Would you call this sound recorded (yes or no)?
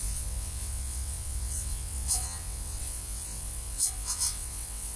no